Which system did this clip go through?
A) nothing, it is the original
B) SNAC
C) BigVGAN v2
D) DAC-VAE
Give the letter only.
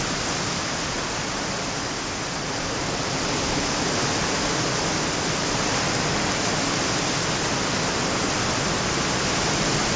A